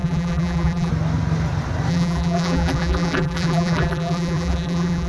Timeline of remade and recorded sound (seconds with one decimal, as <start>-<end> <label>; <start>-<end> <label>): 0.0-0.9 remade; 0.9-1.9 recorded; 1.9-5.1 remade